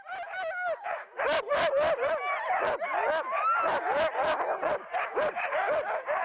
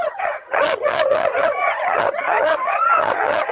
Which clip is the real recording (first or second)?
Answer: first